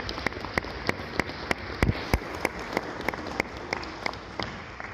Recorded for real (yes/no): yes